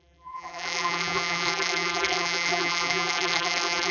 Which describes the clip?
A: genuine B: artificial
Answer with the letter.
B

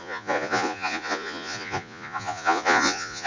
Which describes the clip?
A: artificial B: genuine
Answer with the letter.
A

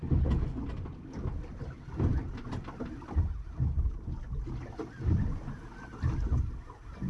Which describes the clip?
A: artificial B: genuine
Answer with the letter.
B